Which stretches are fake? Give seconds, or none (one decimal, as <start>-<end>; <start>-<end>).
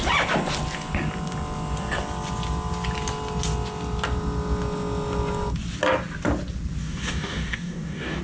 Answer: 6.8-8.2